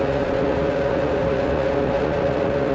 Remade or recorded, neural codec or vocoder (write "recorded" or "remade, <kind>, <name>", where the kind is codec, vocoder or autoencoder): remade, vocoder, Vocos